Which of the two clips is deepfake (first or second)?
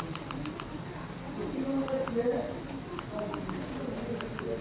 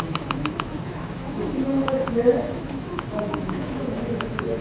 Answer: second